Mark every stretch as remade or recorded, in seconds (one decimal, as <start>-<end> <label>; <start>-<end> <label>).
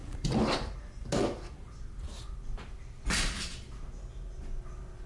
0.0-0.8 remade; 0.8-5.1 recorded